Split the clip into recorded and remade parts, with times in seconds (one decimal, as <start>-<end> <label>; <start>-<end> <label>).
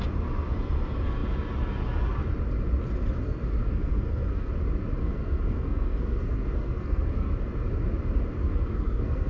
0.0-3.2 recorded; 3.2-4.5 remade; 4.5-5.0 recorded; 5.0-7.3 remade; 7.3-8.4 recorded; 8.4-9.3 remade